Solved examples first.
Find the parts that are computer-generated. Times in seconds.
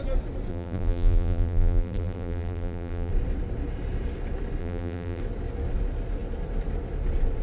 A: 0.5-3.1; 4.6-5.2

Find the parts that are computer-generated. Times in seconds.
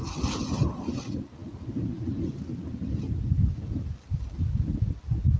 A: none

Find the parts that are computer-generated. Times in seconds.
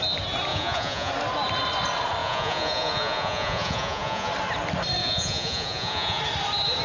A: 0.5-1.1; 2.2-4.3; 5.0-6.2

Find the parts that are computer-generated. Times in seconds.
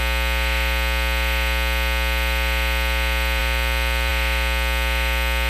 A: none